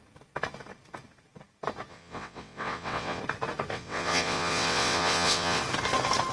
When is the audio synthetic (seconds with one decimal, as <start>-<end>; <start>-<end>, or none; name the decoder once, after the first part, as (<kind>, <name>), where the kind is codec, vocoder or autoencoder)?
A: 1.9-3.2 (vocoder, WaveNeXt); 3.7-5.6